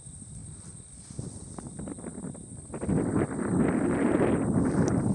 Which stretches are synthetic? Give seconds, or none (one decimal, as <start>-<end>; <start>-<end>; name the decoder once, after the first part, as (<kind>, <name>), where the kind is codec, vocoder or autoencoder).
none